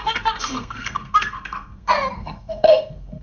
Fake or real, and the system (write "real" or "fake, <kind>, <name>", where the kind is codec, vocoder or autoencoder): fake, codec, SNAC